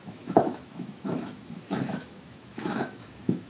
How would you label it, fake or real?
fake